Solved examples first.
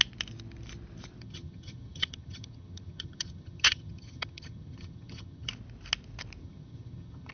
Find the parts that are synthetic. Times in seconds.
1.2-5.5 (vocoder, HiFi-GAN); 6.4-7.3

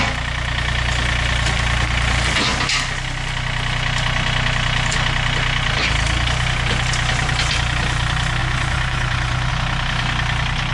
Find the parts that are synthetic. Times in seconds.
8.4-9.5 (vocoder, Vocos)

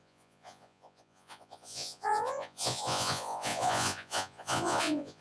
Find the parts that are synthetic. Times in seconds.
0.0-5.2 (vocoder, Vocos)

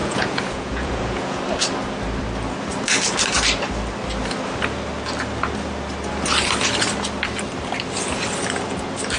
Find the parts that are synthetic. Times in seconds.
0.0-1.4 (vocoder, Vocos)

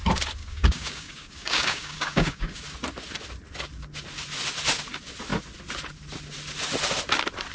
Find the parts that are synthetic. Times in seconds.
0.4-2.6 (codec, DAC)

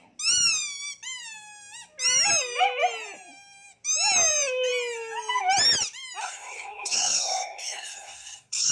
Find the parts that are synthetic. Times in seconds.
6.2-8.7 (codec, SNAC)